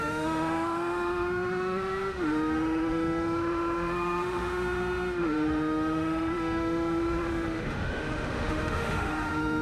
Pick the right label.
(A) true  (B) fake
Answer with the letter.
B